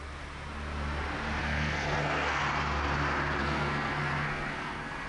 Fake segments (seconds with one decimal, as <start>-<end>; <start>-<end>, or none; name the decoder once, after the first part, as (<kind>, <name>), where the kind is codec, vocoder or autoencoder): 1.4-2.4 (codec, SNAC); 3.4-5.1